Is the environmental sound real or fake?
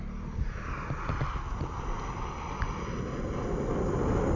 real